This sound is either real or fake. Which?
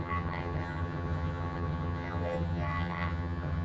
fake